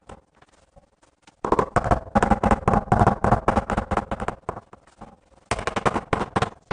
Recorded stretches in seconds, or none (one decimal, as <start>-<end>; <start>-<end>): 0.0-6.7